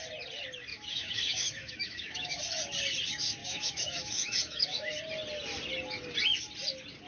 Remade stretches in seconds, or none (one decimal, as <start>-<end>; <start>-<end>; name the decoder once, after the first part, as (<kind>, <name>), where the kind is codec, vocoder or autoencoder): 0.7-2.4 (autoencoder, DAC-VAE); 3.4-5.0